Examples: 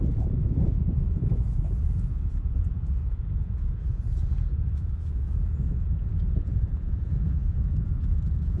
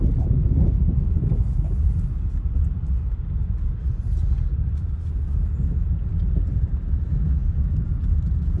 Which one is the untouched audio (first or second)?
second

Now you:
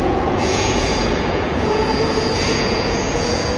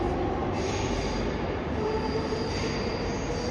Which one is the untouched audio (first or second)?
second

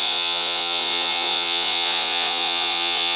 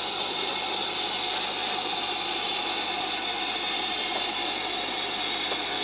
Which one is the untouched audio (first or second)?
second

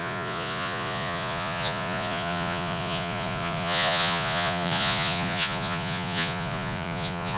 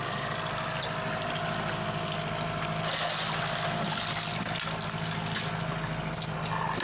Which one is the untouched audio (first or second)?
second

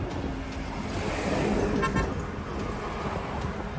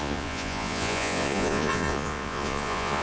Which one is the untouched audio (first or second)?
first